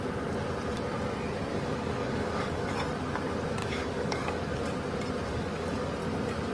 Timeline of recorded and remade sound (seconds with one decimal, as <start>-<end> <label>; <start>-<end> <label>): 0.0-1.5 recorded; 1.5-2.7 remade; 2.7-3.6 recorded; 3.6-4.6 remade; 4.6-5.3 recorded; 5.3-5.9 remade; 5.9-6.5 recorded